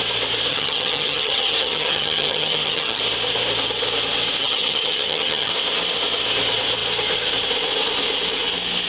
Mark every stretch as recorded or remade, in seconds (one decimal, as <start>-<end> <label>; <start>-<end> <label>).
0.0-0.5 recorded; 0.5-3.0 remade; 3.0-4.4 recorded; 4.4-5.5 remade; 5.5-8.9 recorded